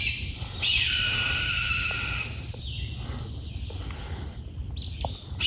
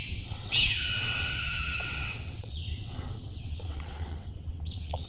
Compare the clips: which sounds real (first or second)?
first